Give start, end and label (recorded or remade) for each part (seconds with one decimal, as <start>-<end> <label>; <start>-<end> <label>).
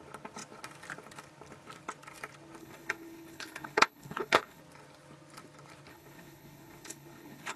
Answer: 0.0-2.6 recorded; 2.6-4.6 remade; 4.6-5.9 recorded; 5.9-7.6 remade